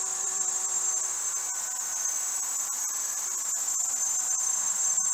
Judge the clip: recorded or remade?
remade